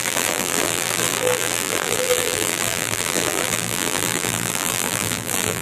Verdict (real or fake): fake